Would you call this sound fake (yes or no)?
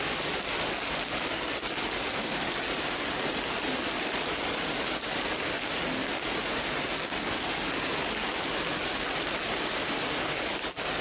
no